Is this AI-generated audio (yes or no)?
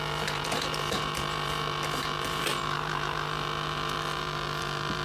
yes